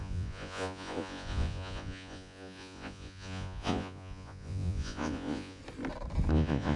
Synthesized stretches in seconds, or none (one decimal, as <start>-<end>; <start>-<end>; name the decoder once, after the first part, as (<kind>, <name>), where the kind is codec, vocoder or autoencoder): 0.0-5.6 (vocoder, Vocos); 6.3-6.8

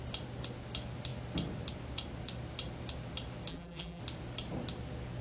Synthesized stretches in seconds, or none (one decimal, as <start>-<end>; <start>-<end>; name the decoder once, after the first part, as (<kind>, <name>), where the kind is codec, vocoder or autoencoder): 3.5-4.0 (vocoder, BigVGAN v2)

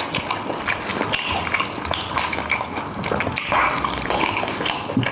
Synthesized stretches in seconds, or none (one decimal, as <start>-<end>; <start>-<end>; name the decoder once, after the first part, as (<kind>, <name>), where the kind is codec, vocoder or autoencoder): none

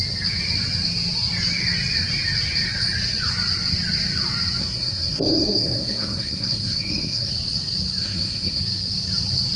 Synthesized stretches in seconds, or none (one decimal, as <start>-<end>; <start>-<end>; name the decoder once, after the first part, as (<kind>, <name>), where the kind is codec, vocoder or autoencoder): 4.6-7.3 (codec, SNAC); 8.0-8.6